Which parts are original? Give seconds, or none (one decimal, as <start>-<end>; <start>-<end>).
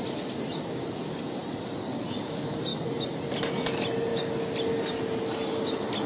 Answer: 0.0-6.1